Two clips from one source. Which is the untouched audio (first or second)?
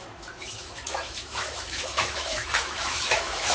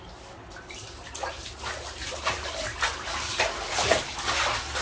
second